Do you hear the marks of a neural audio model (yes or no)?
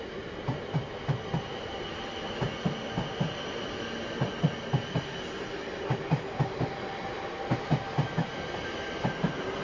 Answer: no